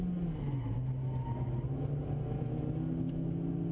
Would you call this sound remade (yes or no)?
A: no